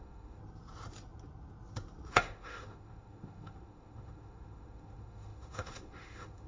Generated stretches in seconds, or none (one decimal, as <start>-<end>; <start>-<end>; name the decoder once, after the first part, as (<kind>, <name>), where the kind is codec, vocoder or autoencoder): 0.0-0.4 (autoencoder, DAC-VAE); 2.1-6.5